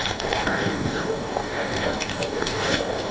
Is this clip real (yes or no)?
no